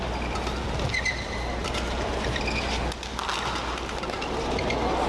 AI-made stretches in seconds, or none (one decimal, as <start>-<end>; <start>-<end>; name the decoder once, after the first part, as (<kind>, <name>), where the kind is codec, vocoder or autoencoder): 0.6-2.4 (vocoder, BigVGAN v2)